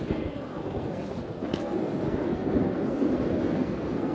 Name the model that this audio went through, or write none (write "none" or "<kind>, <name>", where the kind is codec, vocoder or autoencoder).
codec, SNAC